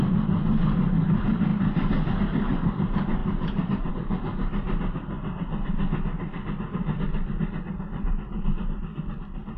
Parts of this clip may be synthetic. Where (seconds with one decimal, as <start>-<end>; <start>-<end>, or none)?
3.2-3.9